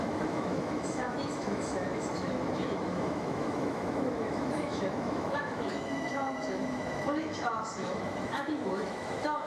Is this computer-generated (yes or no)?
yes